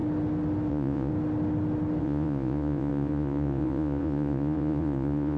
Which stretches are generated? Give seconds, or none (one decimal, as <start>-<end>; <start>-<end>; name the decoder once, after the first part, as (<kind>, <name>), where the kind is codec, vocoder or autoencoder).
0.7-1.1 (vocoder, Vocos); 2.0-5.4